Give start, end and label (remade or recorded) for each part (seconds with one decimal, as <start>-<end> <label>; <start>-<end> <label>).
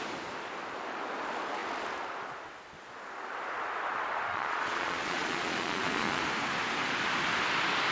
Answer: 0.0-4.3 recorded; 4.3-6.2 remade; 6.2-7.9 recorded